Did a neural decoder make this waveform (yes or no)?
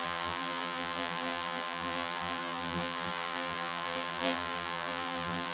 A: yes